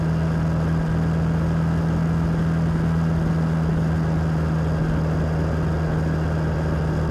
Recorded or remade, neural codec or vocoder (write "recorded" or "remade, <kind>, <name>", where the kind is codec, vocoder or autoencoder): recorded